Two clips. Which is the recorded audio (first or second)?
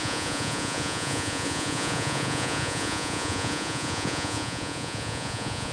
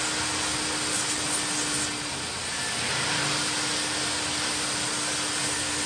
second